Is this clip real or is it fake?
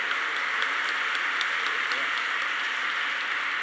real